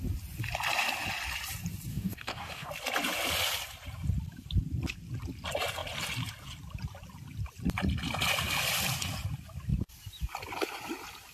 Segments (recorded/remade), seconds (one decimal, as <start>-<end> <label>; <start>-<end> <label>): 0.0-1.9 recorded; 1.9-2.7 remade; 2.7-11.3 recorded